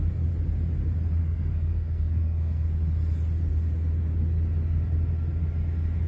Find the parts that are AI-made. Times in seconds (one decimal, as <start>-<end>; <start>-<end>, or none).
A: 1.2-2.7